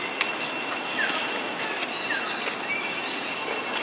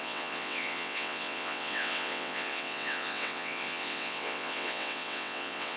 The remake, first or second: second